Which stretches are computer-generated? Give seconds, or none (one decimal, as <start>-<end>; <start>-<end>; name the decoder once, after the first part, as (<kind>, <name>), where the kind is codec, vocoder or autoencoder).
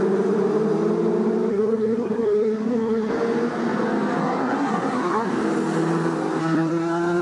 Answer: 1.5-3.1 (codec, SNAC); 4.2-5.3; 6.4-7.2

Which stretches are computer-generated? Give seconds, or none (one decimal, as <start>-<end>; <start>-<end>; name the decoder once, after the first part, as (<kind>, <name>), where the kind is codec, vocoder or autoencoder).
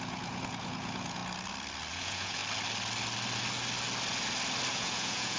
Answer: 0.0-1.2 (vocoder, Vocos); 1.9-2.4; 4.7-5.4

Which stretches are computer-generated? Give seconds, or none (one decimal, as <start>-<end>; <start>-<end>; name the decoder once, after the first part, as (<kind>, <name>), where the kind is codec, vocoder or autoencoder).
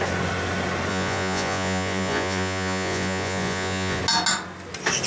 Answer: 0.9-4.0 (vocoder, Vocos)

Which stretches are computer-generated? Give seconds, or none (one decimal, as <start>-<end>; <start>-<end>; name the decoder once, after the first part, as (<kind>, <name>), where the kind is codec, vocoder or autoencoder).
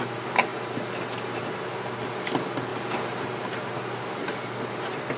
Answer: 0.5-1.4 (vocoder, BigVGAN v2); 2.7-3.9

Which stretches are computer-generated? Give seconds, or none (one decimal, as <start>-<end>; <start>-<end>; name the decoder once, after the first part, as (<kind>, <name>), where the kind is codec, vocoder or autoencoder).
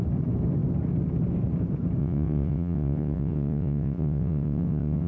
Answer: 2.0-5.1 (vocoder, WaveNeXt)